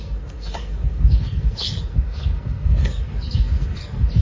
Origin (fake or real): fake